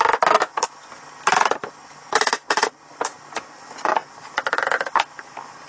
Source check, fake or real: real